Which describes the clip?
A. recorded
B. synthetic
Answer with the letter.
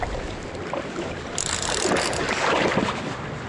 A